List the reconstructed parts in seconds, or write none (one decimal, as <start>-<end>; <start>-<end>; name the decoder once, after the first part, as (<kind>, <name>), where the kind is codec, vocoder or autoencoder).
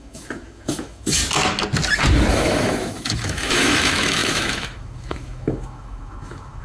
0.0-1.2 (autoencoder, DAC-VAE); 2.3-6.6